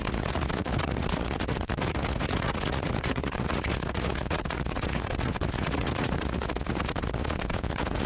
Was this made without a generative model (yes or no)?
no